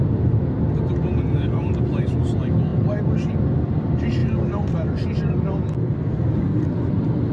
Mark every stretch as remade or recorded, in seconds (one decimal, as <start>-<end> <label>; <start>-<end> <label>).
0.0-7.3 recorded